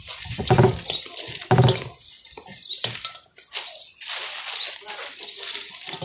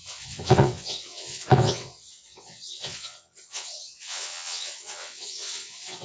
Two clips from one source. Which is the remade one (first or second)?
second